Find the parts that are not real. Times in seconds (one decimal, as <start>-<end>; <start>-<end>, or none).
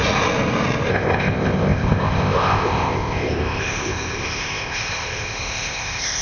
0.9-6.2